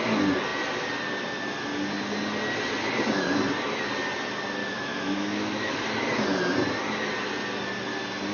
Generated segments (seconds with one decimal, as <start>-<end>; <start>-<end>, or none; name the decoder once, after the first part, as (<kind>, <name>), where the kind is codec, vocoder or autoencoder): 4.6-5.7 (autoencoder, DAC-VAE)